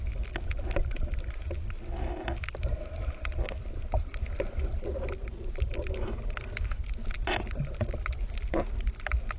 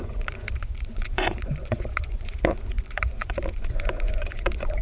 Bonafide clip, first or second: first